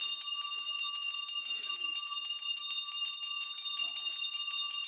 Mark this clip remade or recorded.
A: recorded